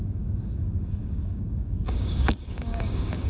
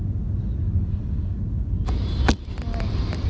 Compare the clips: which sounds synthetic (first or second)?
first